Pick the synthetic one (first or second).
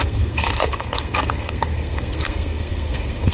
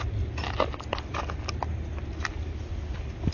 first